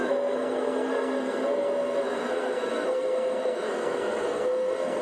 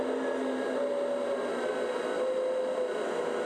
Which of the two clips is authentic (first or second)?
second